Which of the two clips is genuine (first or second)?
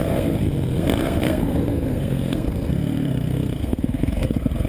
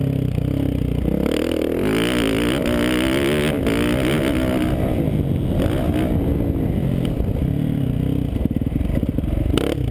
second